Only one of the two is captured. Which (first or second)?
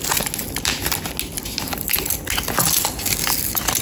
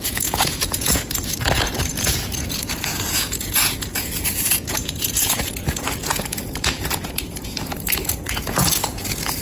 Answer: first